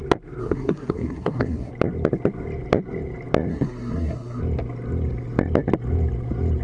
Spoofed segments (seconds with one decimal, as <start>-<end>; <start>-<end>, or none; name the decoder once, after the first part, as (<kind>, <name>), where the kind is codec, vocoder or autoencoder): 0.4-1.7 (codec, SNAC); 3.5-4.4